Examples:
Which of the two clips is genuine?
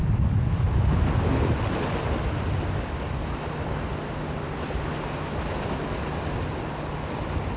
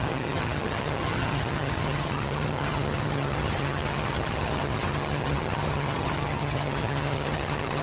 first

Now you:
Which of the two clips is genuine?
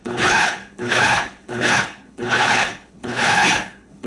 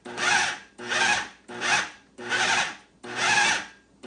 second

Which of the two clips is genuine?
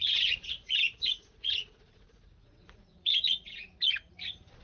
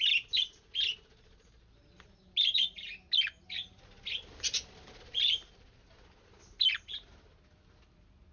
second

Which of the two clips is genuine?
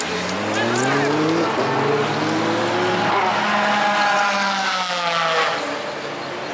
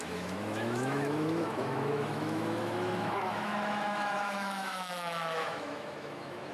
first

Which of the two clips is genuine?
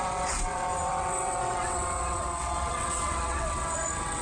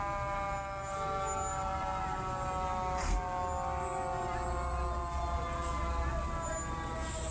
second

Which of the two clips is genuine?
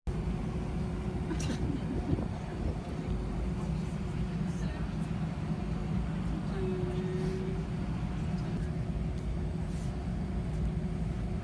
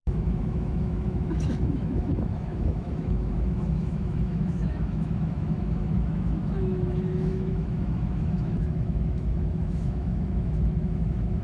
first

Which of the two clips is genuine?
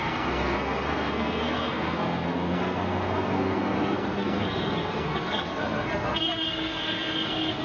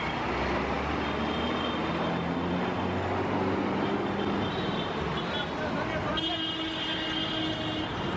second